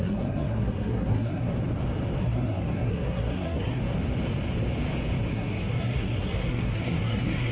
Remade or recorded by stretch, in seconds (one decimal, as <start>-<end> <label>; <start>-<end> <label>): 0.0-1.5 remade; 1.5-2.2 recorded; 2.2-3.8 remade; 3.8-5.3 recorded; 5.3-7.5 remade